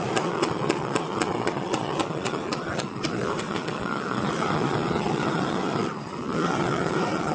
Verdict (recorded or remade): remade